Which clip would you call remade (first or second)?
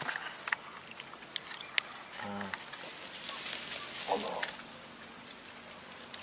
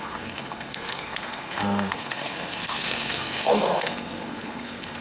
second